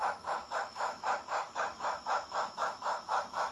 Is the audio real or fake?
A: fake